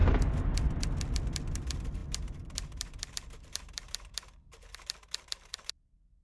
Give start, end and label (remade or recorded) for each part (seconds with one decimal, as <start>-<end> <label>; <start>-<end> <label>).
0.0-1.4 recorded; 1.4-6.2 remade